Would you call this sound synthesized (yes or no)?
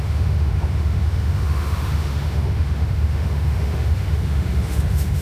yes